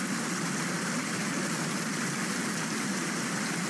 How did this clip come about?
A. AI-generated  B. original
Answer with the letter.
B